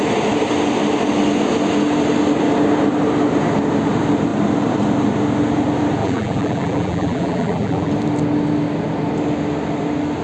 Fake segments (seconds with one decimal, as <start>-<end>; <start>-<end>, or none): 6.0-7.9